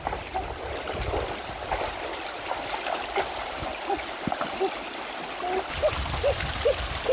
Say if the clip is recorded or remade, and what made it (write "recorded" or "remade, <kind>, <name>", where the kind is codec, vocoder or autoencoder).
recorded